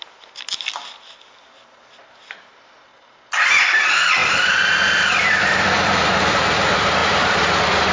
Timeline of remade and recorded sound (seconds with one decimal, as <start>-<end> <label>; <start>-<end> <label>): 0.0-7.9 recorded